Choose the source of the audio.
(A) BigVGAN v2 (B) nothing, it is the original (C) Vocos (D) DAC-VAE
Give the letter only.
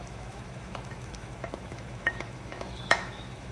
D